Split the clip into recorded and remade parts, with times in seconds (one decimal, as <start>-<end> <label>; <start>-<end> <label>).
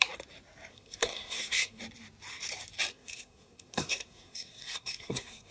0.0-0.7 recorded; 0.7-1.8 remade; 1.8-2.9 recorded; 2.9-5.5 remade